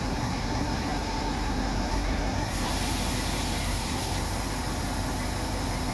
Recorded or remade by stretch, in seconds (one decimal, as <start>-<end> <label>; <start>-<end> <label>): 0.0-2.7 remade; 2.7-3.6 recorded; 3.6-4.1 remade; 4.1-5.9 recorded